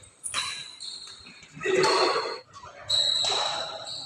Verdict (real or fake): fake